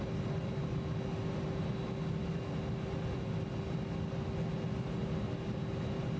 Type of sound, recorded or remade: recorded